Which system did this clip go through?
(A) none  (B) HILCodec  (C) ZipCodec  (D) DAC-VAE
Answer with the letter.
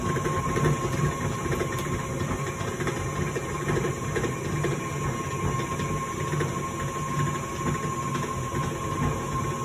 A